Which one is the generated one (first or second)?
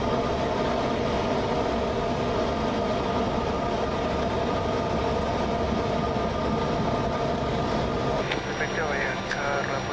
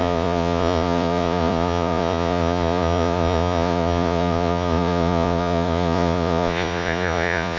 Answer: second